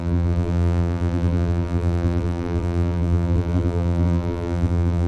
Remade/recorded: remade